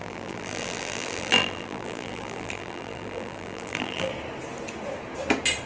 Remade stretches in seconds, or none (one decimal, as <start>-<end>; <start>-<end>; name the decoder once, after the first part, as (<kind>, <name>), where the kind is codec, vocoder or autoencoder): 0.0-4.1 (vocoder, BigVGAN v2)